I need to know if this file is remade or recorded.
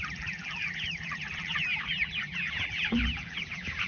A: remade